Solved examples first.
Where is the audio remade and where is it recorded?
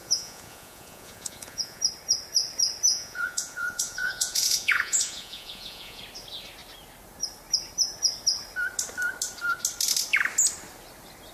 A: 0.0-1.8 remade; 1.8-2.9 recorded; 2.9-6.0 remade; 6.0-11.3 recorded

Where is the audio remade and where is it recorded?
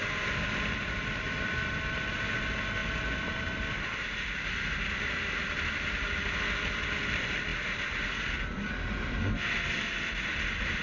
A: 0.0-10.8 recorded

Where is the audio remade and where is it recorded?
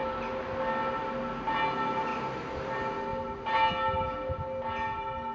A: 0.0-5.3 recorded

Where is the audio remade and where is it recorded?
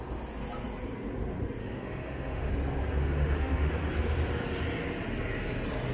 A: 0.0-1.6 recorded; 1.6-2.5 remade; 2.5-3.0 recorded; 3.0-3.7 remade; 3.7-5.9 recorded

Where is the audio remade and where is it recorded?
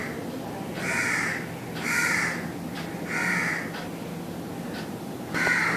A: 0.0-5.8 recorded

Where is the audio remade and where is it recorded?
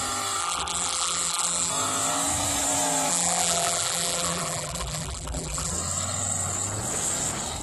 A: 0.0-0.4 recorded; 0.4-1.7 remade; 1.7-3.1 recorded; 3.1-5.7 remade; 5.7-7.6 recorded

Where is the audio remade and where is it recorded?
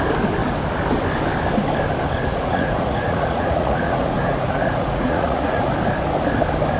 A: 0.0-2.3 recorded; 2.3-5.7 remade; 5.7-6.8 recorded